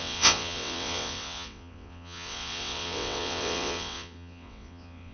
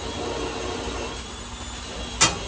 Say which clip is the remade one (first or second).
first